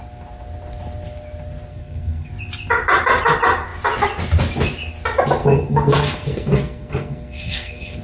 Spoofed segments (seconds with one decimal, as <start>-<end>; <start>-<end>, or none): 1.7-2.3; 5.4-8.0